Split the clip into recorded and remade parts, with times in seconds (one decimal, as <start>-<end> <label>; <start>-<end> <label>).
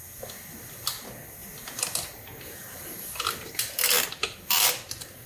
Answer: 0.0-5.3 recorded